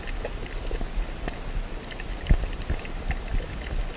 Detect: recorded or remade recorded